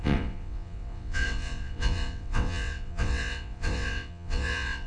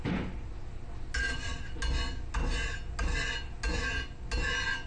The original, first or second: second